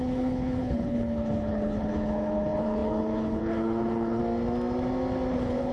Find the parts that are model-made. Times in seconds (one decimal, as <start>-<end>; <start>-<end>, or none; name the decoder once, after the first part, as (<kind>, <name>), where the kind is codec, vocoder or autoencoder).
0.0-4.2 (codec, HILCodec); 5.3-5.7